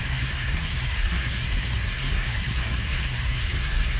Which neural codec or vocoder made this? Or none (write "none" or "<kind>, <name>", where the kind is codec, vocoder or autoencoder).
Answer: codec, SNAC